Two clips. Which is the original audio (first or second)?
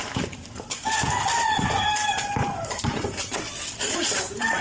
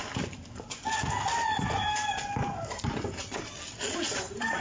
second